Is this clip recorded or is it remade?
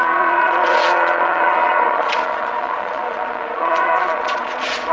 remade